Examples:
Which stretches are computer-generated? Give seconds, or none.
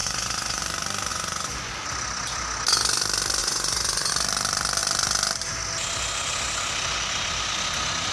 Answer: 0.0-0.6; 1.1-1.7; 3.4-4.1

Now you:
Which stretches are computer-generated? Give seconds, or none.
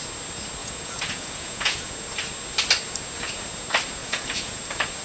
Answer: 0.6-1.9; 4.0-4.6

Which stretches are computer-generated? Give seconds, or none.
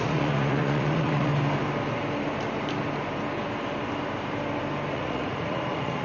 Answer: 0.0-1.3; 4.9-6.0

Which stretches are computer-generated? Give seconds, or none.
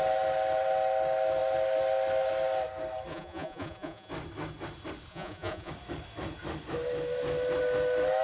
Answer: 3.1-4.1; 5.1-5.7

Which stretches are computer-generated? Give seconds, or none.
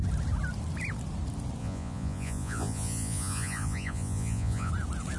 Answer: 1.6-4.7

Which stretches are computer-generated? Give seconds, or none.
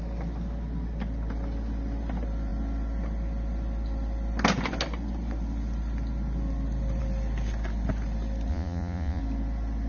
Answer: 8.5-9.2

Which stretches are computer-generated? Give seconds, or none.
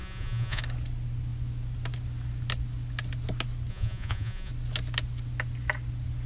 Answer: 0.0-0.6; 3.7-4.5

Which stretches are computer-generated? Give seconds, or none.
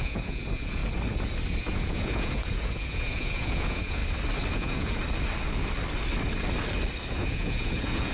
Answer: 0.0-0.8; 1.6-4.0; 4.5-5.0; 7.1-8.1